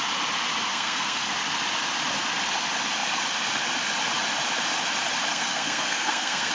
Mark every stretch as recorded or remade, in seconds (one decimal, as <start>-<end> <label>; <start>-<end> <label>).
0.0-0.7 recorded; 0.7-1.3 remade; 1.3-5.3 recorded; 5.3-6.5 remade